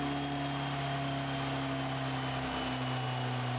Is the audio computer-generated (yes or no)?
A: no